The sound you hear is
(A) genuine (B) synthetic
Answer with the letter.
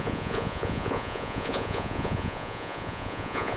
B